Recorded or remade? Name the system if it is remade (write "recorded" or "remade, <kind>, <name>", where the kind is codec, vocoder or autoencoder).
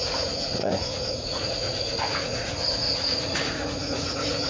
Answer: remade, vocoder, Vocos